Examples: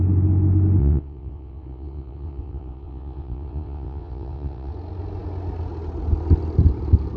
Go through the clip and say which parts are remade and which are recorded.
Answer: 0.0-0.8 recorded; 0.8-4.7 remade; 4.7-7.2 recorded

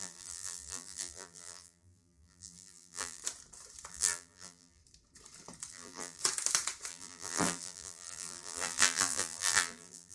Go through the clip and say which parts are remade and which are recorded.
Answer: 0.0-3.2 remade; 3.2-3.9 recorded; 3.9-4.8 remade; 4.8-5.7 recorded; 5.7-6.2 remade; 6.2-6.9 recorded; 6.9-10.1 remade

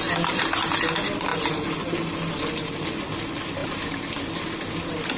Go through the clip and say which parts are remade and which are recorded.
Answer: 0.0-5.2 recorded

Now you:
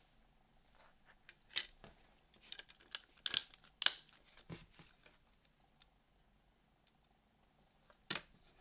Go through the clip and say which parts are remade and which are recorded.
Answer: 0.0-8.6 recorded

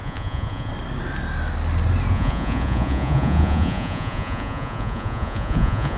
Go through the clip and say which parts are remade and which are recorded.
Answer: 0.0-0.7 remade; 0.7-2.1 recorded; 2.1-6.0 remade